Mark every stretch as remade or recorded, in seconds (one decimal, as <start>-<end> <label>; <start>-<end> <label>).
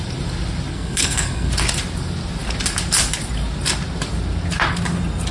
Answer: 0.0-0.7 recorded; 0.7-1.5 remade; 1.5-5.3 recorded